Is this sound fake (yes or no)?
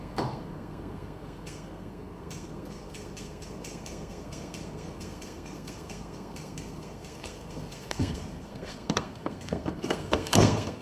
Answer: yes